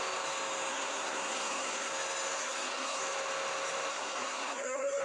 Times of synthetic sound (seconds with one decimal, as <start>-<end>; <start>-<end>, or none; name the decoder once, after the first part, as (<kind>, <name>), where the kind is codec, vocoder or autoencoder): 0.7-1.9 (codec, SNAC); 2.4-3.0; 3.9-5.0